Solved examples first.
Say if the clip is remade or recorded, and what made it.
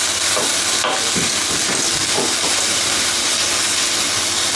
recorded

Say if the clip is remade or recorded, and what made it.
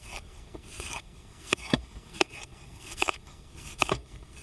remade, codec, SNAC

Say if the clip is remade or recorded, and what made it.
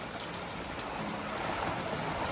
recorded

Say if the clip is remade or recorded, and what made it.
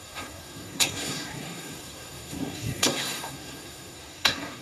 remade, codec, SNAC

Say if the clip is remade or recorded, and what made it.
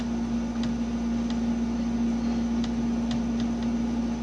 recorded